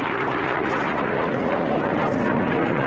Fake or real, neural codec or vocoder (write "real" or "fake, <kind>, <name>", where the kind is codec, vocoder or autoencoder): fake, vocoder, Vocos